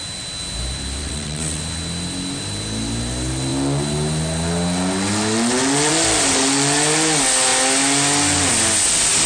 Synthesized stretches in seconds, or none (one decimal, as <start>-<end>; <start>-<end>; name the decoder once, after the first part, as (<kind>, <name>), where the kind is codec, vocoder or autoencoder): 1.0-1.6 (vocoder, WaveNeXt)